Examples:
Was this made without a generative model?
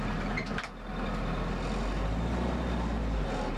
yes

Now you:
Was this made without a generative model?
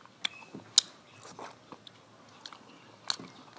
yes